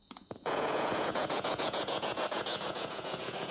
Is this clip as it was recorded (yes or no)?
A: no